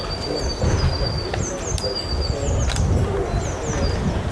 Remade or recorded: recorded